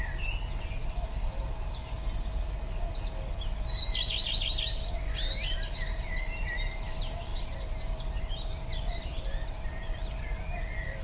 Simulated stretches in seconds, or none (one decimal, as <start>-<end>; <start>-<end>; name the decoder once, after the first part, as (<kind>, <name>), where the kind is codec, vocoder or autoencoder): 0.8-1.4 (vocoder, BigVGAN v2); 7.3-9.9